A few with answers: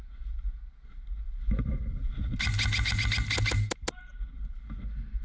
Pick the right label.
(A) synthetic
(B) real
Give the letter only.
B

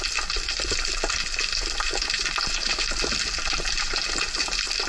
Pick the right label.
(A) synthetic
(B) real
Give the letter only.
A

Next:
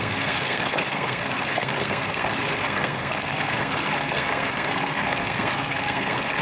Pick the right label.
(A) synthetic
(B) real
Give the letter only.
A